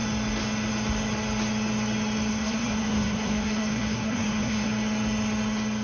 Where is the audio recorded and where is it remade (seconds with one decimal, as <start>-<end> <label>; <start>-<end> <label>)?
0.0-2.3 recorded; 2.3-4.7 remade; 4.7-5.8 recorded